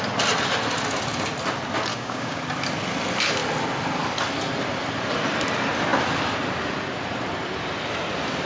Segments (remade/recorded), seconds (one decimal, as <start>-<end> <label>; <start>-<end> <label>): 0.0-1.9 recorded; 1.9-2.4 remade; 2.4-8.5 recorded